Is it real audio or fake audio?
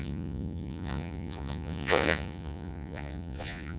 fake